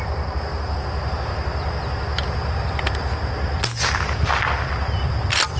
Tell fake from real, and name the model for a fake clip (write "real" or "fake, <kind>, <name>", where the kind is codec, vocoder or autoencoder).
real